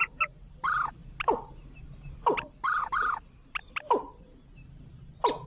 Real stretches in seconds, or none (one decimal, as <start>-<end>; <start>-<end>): 0.0-5.5